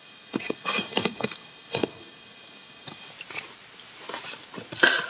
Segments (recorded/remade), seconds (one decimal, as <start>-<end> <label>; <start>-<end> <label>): 0.0-3.1 remade; 3.1-5.1 recorded